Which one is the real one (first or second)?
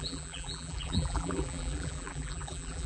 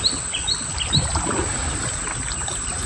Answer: second